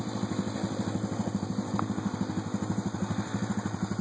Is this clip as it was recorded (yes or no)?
yes